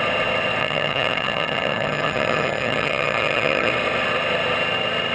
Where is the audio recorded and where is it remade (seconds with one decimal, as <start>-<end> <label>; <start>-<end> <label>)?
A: 0.0-0.6 recorded; 0.6-3.7 remade; 3.7-5.1 recorded